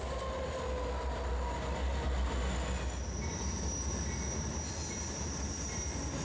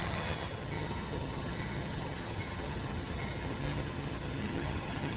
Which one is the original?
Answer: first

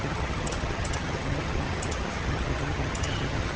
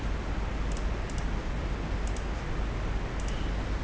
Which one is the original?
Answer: second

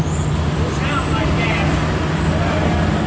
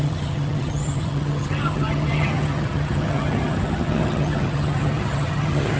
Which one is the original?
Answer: first